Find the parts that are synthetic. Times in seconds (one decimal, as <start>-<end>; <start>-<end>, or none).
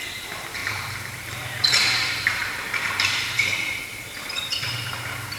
0.0-5.4